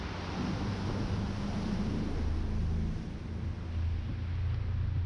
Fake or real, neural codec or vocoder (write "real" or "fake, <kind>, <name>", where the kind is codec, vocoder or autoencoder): real